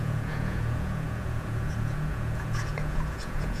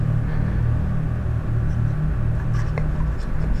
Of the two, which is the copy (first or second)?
first